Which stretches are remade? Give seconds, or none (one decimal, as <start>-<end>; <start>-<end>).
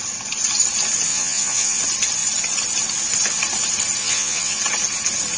1.1-1.8; 4.0-4.6